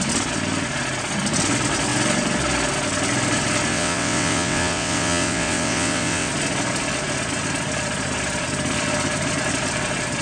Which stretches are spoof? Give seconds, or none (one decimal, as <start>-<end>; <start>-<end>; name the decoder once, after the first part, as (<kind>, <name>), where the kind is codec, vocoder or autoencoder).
3.7-6.3 (vocoder, WaveNeXt)